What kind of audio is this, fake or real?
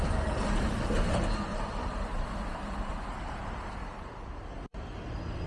fake